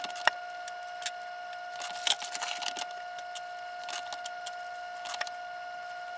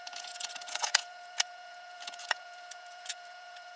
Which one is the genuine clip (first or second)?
first